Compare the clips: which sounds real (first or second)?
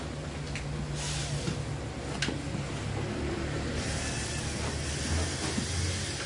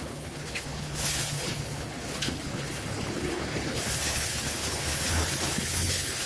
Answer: first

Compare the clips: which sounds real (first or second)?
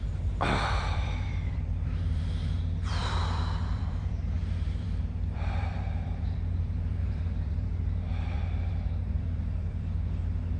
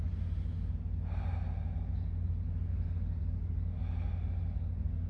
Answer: second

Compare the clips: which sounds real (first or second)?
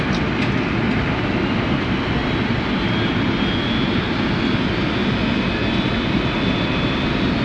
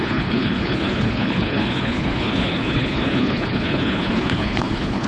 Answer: first